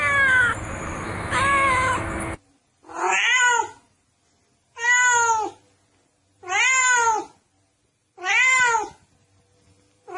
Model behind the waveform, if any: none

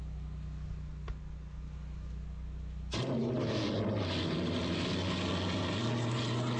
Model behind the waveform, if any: none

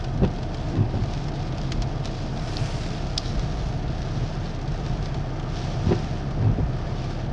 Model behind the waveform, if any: none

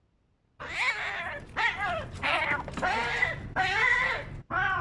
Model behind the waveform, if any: none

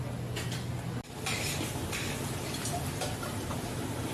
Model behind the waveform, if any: none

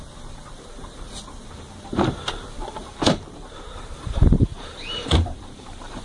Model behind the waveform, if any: vocoder, BigVGAN v2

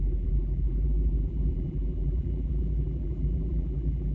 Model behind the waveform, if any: vocoder, BigVGAN v2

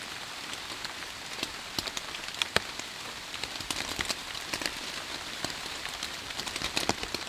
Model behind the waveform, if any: vocoder, BigVGAN v2